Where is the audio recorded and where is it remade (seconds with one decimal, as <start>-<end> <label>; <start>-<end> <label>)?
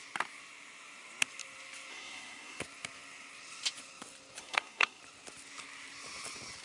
0.0-1.9 recorded; 1.9-2.6 remade; 2.6-4.4 recorded; 4.4-5.0 remade; 5.0-6.6 recorded